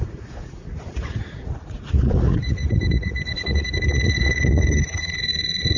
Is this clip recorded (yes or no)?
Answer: no